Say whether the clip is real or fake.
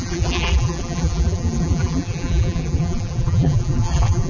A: fake